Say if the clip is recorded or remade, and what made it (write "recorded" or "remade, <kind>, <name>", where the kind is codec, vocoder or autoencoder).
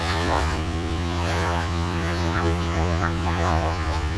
remade, vocoder, Vocos